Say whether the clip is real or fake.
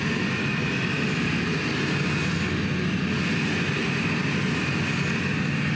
real